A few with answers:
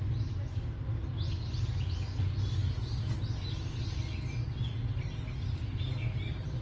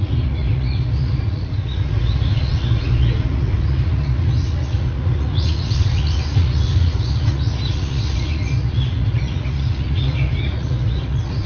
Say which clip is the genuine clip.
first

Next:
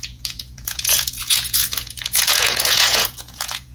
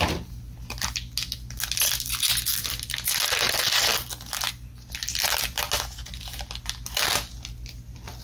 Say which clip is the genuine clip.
second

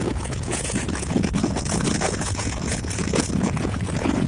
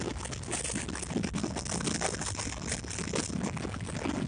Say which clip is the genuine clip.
second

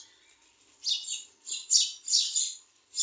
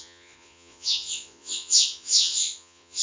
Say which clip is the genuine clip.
first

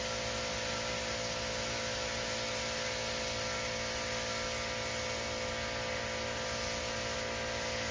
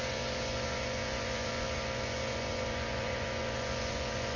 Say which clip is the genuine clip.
first